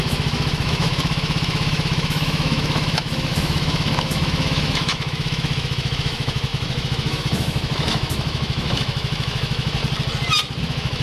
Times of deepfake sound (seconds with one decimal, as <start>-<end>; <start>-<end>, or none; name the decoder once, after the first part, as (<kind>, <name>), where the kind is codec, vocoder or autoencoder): 0.0-9.8 (autoencoder, DAC-VAE); 10.6-11.0